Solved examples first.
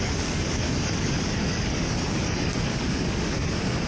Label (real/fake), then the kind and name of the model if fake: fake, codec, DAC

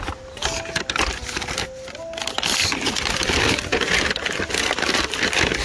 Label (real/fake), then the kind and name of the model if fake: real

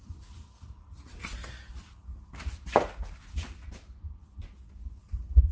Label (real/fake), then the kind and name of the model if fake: real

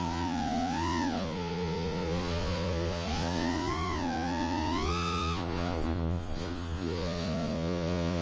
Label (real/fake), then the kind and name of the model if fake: fake, vocoder, Vocos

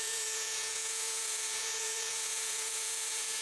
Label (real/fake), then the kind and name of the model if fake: fake, vocoder, Vocos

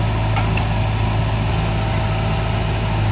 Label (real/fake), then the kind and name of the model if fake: real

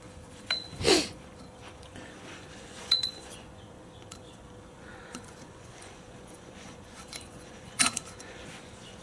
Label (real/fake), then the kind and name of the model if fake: fake, vocoder, Vocos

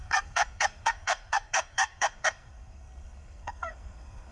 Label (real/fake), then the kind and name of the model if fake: fake, codec, SNAC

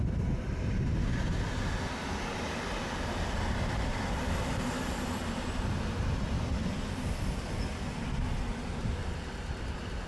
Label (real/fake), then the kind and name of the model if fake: real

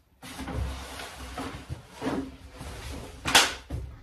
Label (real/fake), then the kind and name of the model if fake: real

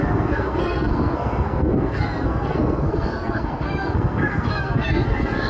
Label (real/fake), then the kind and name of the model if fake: fake, codec, SNAC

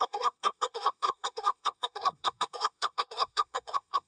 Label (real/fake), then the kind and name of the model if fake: fake, codec, SNAC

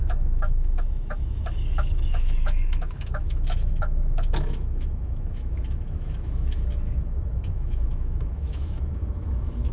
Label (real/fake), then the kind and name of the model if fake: fake, autoencoder, DAC-VAE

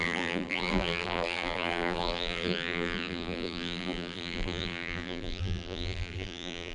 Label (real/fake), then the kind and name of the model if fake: fake, vocoder, BigVGAN v2